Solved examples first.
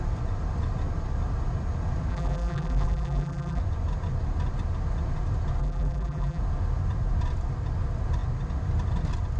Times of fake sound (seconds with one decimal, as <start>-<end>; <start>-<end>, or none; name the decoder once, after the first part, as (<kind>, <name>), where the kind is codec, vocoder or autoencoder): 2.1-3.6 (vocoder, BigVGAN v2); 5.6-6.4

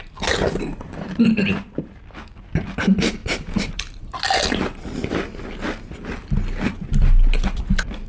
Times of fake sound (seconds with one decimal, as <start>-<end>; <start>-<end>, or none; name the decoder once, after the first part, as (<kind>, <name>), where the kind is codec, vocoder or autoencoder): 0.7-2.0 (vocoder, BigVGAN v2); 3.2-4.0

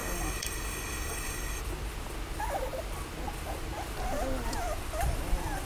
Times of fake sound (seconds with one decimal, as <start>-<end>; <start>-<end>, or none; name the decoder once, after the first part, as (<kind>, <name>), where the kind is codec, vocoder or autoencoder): 0.0-1.6 (codec, DAC)

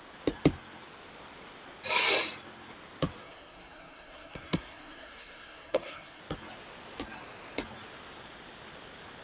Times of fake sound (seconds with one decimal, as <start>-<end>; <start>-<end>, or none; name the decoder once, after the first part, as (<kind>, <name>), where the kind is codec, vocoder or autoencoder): 3.2-6.2 (codec, SNAC)

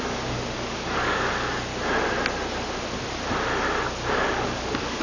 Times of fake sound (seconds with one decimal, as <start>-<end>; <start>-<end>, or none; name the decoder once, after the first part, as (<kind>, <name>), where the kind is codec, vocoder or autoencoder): 0.0-1.7 (codec, DAC); 4.1-5.0

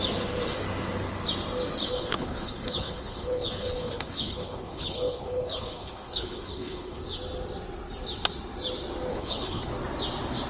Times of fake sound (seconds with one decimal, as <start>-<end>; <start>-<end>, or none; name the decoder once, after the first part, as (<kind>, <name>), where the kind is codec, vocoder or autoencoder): 1.8-7.0 (codec, HILCodec); 9.1-9.7